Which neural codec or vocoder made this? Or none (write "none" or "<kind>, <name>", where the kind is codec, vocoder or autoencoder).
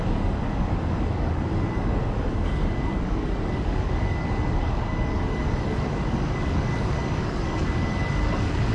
codec, DAC